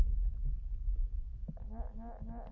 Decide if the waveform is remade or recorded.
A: recorded